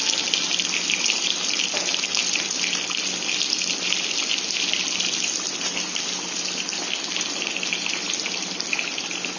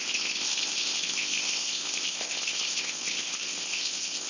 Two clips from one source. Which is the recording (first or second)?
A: first